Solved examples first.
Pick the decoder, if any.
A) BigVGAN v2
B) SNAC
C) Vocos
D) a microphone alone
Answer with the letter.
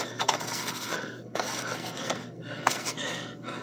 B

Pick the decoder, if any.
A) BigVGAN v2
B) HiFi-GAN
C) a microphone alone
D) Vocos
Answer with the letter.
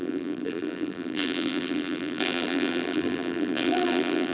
A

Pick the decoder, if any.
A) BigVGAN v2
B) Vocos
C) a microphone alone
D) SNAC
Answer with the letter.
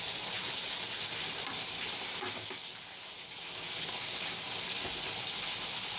C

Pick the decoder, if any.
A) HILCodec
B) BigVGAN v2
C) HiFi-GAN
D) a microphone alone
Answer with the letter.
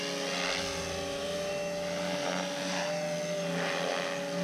D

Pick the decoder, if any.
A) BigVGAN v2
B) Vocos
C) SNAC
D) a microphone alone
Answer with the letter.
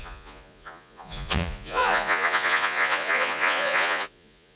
B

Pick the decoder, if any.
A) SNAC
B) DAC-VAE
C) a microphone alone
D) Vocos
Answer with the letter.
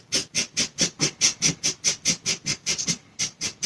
C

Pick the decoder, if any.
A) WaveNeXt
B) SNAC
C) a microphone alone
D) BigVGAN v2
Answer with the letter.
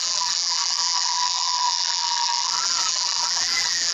D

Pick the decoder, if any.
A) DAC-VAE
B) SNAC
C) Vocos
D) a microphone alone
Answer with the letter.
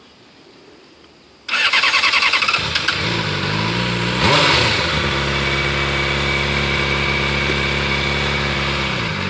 D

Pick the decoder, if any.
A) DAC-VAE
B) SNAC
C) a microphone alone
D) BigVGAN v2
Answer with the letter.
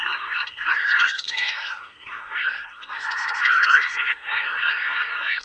B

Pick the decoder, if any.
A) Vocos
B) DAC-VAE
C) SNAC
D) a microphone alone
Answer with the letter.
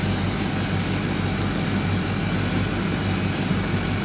D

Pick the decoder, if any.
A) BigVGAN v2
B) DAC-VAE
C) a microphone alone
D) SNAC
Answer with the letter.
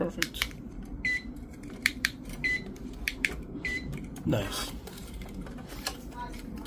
A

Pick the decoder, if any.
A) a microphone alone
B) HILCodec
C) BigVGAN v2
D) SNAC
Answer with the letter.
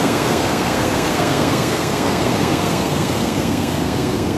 D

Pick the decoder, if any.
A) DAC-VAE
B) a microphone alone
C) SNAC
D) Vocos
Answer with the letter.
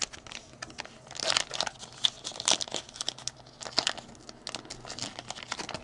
B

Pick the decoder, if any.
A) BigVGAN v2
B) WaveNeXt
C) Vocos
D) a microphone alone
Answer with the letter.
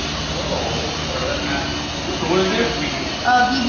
D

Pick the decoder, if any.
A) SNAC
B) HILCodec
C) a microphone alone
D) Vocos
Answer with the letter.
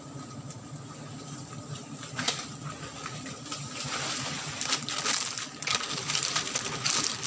C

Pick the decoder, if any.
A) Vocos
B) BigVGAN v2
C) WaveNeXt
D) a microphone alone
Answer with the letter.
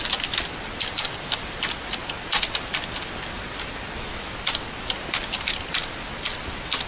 D